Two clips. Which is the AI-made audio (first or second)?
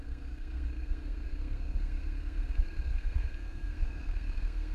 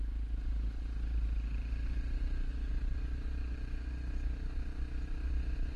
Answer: first